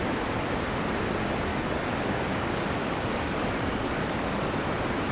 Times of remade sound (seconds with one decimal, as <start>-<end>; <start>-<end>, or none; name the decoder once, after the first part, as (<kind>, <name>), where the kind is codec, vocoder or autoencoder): 1.5-4.6 (codec, DAC)